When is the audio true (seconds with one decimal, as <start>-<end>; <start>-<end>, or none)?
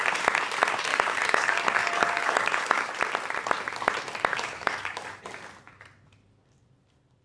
0.0-0.9; 2.9-4.3; 5.2-7.2